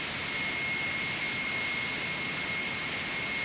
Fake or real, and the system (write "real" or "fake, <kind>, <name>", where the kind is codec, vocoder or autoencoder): real